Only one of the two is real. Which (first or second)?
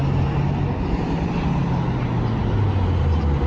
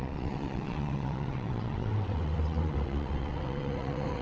first